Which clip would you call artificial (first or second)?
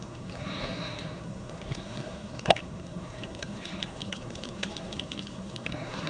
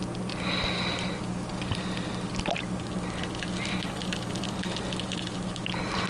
first